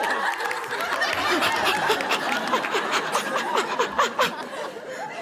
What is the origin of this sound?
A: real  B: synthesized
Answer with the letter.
A